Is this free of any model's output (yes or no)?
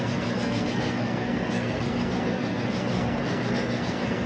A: no